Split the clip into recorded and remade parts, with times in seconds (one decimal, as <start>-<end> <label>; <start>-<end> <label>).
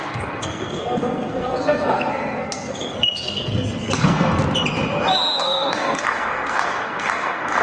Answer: 0.0-4.4 remade; 4.4-5.4 recorded; 5.4-7.6 remade